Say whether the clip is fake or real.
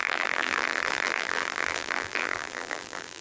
fake